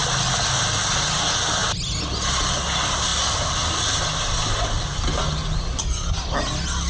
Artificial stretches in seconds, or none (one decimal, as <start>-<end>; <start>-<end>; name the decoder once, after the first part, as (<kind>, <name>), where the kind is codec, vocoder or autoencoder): none